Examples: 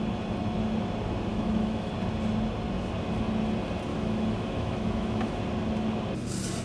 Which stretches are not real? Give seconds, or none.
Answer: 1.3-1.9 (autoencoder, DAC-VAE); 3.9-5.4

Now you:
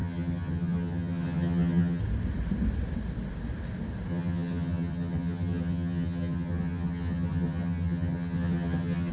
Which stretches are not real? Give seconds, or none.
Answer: 0.0-2.0 (vocoder, HiFi-GAN); 4.1-9.1